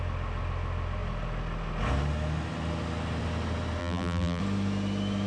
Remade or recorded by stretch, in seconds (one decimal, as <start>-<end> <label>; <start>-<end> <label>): 0.0-3.8 recorded; 3.8-4.4 remade; 4.4-5.3 recorded